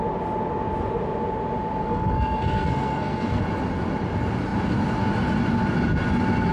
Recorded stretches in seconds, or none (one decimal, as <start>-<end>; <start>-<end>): 0.0-1.8; 3.4-6.5